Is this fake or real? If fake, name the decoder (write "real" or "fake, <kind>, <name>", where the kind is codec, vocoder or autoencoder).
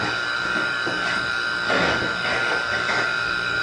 fake, codec, DAC